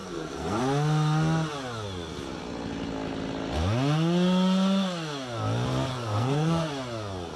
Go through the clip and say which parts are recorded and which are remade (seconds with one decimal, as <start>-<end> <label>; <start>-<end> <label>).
0.0-0.6 remade; 0.6-5.9 recorded; 5.9-6.7 remade; 6.7-7.4 recorded